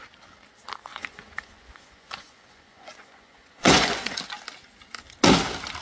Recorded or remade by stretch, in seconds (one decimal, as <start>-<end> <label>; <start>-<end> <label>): 0.0-0.9 recorded; 0.9-4.2 remade; 4.2-5.8 recorded